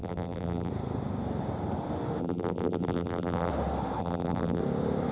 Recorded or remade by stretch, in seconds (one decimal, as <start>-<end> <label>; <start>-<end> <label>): 0.0-0.7 remade; 0.7-2.2 recorded; 2.2-3.5 remade; 3.5-4.0 recorded; 4.0-4.6 remade; 4.6-5.1 recorded